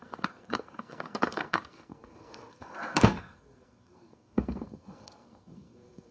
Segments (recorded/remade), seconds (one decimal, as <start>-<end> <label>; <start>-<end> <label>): 0.0-6.1 remade